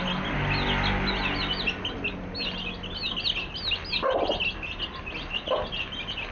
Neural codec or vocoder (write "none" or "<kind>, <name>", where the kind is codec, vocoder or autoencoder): none